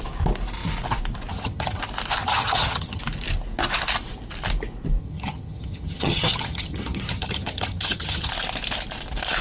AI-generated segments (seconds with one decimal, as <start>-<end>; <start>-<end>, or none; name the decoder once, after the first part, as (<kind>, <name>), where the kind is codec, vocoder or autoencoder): 1.3-1.8 (vocoder, HiFi-GAN); 2.2-3.0; 5.0-8.3